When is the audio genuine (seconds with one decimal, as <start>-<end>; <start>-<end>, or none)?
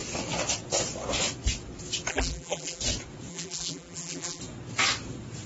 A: 0.0-2.1; 2.8-3.3; 4.4-5.5